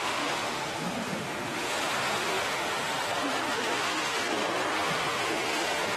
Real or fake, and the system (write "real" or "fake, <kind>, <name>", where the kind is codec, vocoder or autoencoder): fake, autoencoder, DAC-VAE